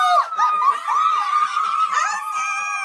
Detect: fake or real real